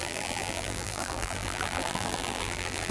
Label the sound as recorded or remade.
remade